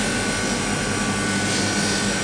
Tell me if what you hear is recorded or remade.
recorded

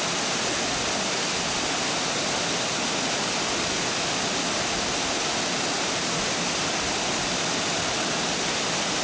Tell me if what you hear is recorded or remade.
recorded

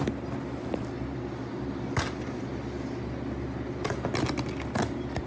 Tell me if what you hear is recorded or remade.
recorded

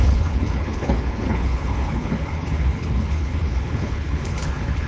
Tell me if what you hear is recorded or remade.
remade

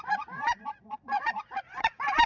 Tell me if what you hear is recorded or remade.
remade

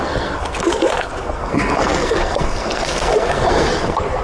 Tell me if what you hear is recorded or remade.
remade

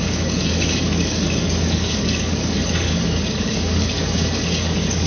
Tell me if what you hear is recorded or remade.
remade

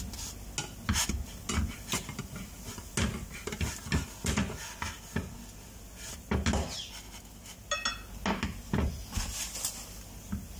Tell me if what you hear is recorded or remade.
recorded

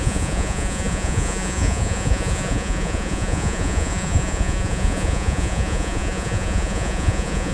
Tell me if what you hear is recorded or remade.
remade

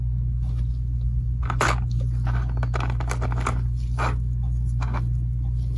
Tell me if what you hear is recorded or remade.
recorded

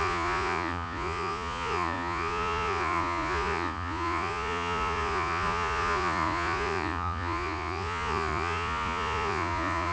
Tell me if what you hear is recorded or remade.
remade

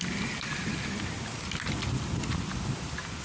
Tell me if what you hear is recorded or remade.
recorded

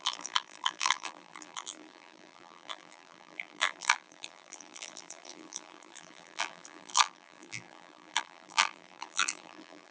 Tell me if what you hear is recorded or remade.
remade